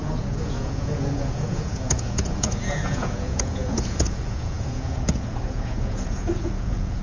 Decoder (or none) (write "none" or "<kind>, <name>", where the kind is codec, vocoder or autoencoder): vocoder, Vocos